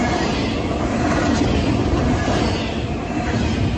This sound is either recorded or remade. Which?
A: recorded